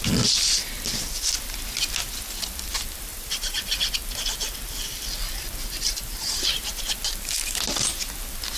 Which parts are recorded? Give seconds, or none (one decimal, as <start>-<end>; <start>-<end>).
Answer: 0.0-3.1; 3.6-5.6; 6.9-8.6